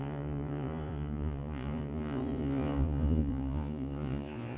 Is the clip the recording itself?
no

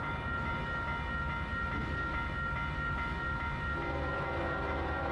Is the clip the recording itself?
yes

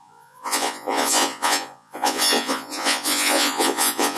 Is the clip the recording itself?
no